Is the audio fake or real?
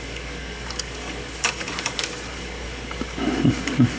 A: fake